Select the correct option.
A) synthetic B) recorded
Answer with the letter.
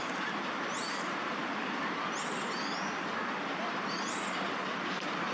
B